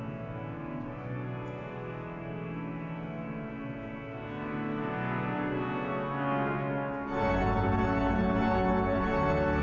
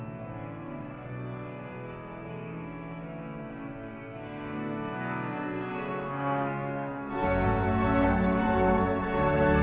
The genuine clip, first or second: first